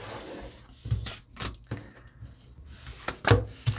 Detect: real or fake real